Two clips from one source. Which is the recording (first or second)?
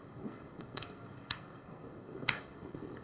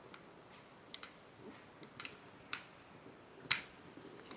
second